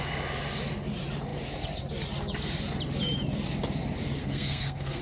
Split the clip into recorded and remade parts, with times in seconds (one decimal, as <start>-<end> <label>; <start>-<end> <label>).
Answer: 0.0-4.2 recorded; 4.2-5.0 remade